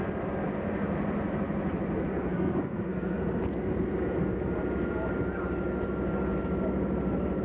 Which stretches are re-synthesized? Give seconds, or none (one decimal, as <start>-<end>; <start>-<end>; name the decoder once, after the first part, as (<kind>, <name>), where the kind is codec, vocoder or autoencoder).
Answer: 2.1-3.4 (codec, SNAC)